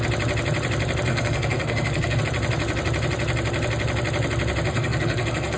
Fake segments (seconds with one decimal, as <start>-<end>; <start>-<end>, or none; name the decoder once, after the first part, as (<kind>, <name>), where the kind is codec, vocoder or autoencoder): 1.1-2.2 (codec, SNAC); 4.7-5.6